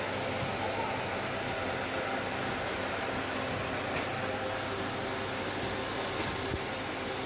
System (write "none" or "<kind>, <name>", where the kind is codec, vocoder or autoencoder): none